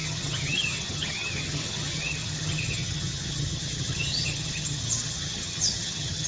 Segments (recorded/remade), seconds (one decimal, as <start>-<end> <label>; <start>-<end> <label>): 0.0-6.3 remade

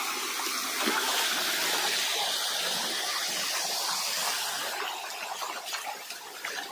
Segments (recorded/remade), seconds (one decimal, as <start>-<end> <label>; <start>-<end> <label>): 0.0-6.7 recorded

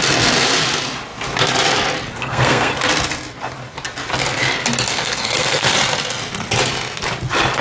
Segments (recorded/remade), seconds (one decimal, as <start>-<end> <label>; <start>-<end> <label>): 0.0-2.2 recorded; 2.2-2.7 remade; 2.7-4.9 recorded; 4.9-5.7 remade; 5.7-7.6 recorded